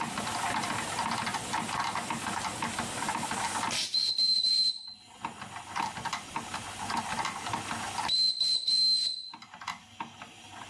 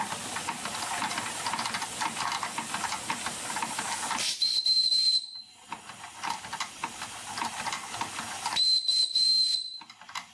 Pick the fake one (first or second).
second